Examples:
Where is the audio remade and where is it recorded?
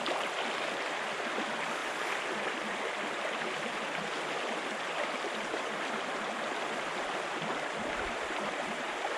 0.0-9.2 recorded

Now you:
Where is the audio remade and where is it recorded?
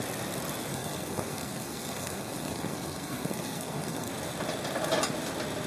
0.0-0.7 recorded; 0.7-4.1 remade; 4.1-5.7 recorded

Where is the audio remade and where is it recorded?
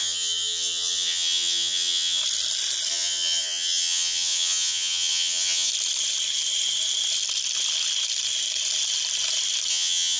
0.0-2.2 remade; 2.2-2.9 recorded; 2.9-5.7 remade; 5.7-9.7 recorded; 9.7-10.2 remade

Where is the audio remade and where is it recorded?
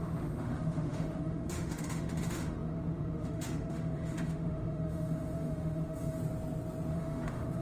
0.0-6.2 remade; 6.2-6.9 recorded; 6.9-7.6 remade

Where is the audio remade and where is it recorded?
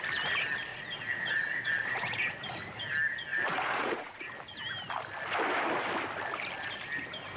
0.0-0.7 recorded; 0.7-2.1 remade; 2.1-3.3 recorded; 3.3-4.2 remade; 4.2-7.4 recorded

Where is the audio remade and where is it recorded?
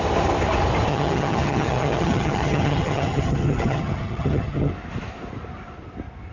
0.0-0.9 recorded; 0.9-4.7 remade; 4.7-6.3 recorded